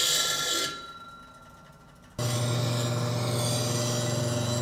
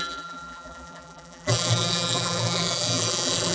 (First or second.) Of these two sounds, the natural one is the first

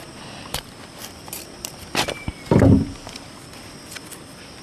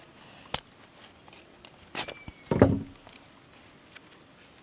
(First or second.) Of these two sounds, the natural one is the second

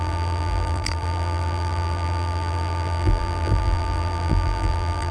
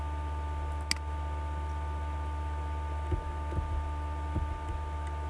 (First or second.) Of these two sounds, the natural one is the second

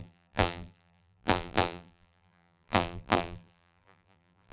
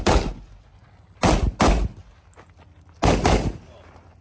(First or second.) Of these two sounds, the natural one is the second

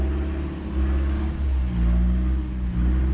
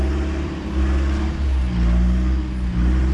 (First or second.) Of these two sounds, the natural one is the first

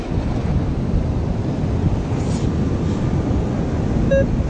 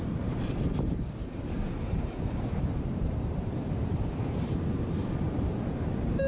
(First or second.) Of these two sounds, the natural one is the first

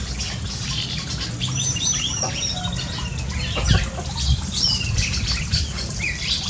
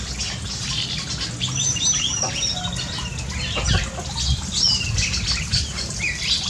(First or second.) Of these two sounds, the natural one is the second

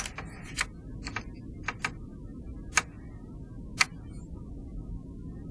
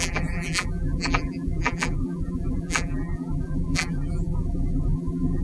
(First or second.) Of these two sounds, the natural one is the first